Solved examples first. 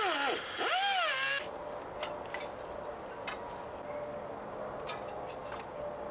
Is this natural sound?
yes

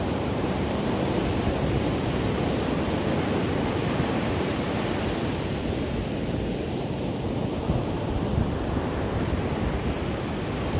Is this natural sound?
no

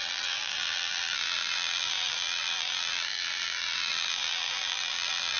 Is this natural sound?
no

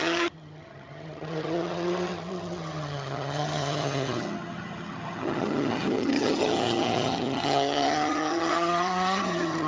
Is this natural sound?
no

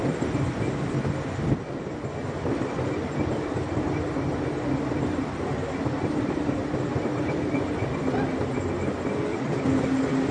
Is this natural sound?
yes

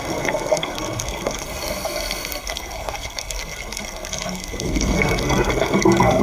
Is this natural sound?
no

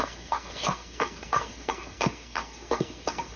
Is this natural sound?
no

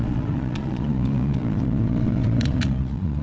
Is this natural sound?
no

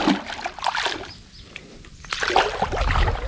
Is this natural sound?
yes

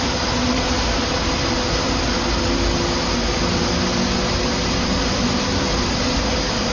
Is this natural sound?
yes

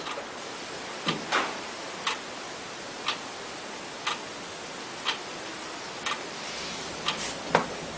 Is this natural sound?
yes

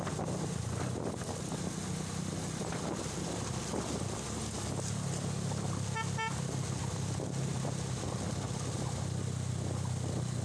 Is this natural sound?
yes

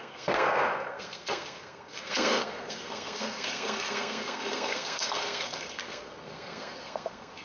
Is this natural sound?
no